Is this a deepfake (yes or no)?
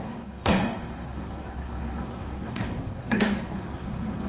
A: yes